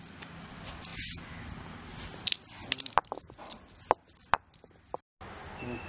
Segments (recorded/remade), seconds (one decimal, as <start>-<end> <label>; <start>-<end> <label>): 0.0-5.9 recorded